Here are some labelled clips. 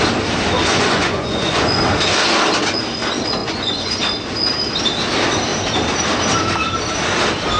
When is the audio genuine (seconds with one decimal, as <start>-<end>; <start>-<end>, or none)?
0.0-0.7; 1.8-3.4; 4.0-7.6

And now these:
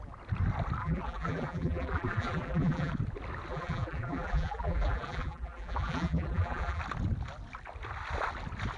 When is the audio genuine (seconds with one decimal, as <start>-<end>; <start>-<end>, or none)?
0.0-0.8; 2.9-3.5; 6.8-8.8

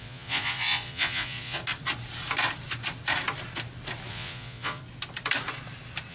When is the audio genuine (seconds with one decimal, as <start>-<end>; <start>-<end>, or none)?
1.6-4.1; 4.8-6.1

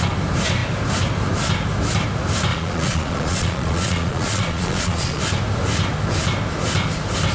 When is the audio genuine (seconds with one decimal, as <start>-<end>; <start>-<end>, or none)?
0.0-2.5; 5.2-7.3

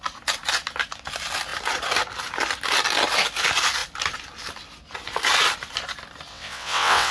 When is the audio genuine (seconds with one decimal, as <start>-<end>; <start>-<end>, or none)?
0.0-6.3